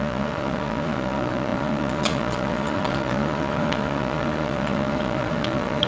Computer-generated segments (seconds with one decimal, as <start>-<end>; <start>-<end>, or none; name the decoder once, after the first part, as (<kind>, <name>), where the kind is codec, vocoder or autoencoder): 0.0-5.9 (vocoder, Vocos)